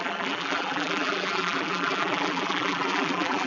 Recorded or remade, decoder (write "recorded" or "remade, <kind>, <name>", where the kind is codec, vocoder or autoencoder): remade, vocoder, BigVGAN v2